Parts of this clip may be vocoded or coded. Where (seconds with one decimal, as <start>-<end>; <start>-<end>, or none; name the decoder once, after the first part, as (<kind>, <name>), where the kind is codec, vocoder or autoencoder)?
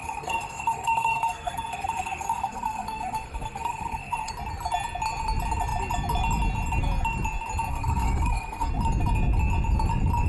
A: 0.0-4.3 (codec, SNAC); 7.7-8.7